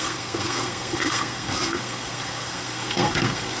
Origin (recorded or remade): remade